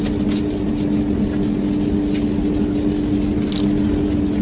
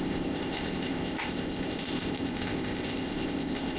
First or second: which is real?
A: first